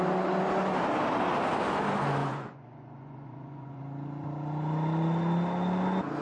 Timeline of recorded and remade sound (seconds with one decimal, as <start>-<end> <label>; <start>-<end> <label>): 0.0-2.2 recorded; 2.2-3.8 remade; 3.8-6.2 recorded